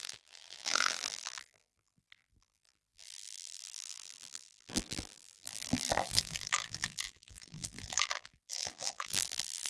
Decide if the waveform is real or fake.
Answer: fake